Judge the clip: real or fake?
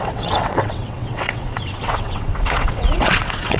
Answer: fake